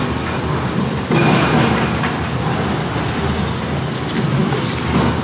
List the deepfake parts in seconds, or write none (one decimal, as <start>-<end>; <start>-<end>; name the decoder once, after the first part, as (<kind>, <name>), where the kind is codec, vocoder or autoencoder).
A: none

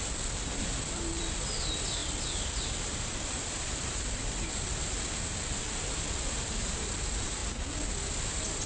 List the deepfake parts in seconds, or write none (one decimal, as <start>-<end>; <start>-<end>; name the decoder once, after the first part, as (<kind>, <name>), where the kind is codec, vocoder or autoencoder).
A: 0.0-7.4 (vocoder, BigVGAN v2); 8.1-8.7

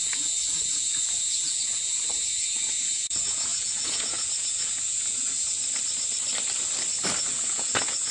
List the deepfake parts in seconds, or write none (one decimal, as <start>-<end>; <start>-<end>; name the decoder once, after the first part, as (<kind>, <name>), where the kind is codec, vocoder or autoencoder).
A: 0.0-5.6 (vocoder, Vocos); 7.2-8.1